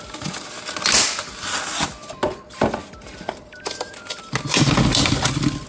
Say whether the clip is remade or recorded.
recorded